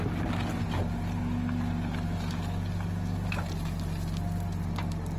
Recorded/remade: recorded